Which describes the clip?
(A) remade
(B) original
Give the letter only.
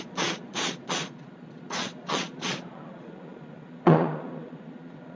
A